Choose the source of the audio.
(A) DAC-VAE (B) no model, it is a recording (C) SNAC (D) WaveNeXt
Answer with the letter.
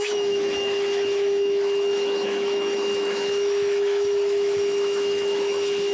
A